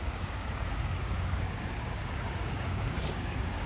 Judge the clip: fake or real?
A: fake